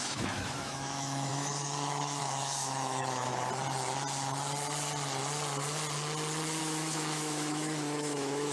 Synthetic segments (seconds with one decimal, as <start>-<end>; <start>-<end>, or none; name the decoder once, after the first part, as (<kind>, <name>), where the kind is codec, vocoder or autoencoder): 0.0-3.3 (autoencoder, DAC-VAE); 6.6-8.5